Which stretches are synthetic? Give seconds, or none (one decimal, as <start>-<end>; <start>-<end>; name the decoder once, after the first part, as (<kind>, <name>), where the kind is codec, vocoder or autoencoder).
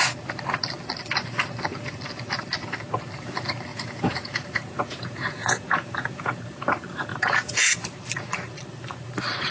3.7-6.4 (vocoder, Vocos); 7.1-7.8